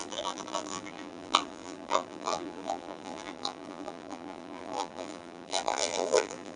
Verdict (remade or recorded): remade